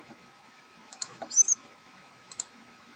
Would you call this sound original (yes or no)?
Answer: no